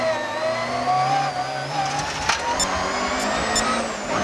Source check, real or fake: real